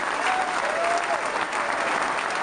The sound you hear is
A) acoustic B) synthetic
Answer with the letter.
A